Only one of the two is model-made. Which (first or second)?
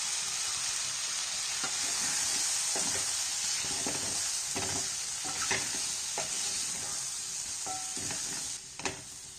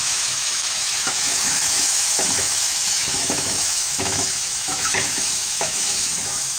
second